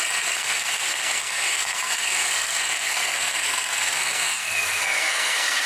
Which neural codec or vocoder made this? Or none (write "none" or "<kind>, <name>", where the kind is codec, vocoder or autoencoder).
codec, SNAC